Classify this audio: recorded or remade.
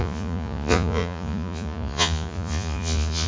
remade